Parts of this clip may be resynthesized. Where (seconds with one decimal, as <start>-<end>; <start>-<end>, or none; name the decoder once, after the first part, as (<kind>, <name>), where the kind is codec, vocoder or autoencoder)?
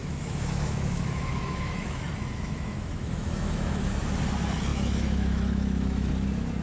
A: 0.0-4.0 (autoencoder, DAC-VAE); 4.7-6.1